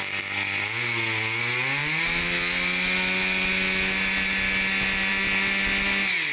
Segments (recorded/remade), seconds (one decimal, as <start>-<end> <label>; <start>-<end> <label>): 0.0-6.3 recorded